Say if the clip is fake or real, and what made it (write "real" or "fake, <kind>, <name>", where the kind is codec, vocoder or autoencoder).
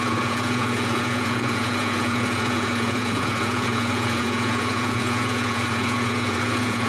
fake, vocoder, Vocos